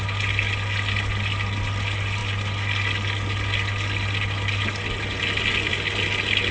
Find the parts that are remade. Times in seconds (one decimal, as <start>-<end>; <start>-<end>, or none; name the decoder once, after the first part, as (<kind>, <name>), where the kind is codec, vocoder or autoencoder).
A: none